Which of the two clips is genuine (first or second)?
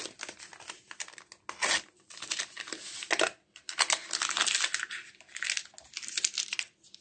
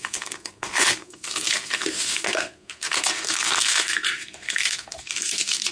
first